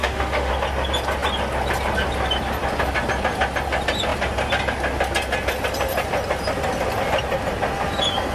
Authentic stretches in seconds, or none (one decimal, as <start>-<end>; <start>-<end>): 0.5-8.3